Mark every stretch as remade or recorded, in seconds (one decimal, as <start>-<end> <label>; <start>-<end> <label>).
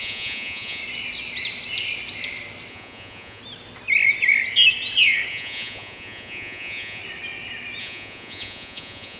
0.0-0.8 remade; 0.8-2.7 recorded; 2.7-3.4 remade; 3.4-5.3 recorded; 5.3-7.0 remade; 7.0-7.8 recorded; 7.8-9.2 remade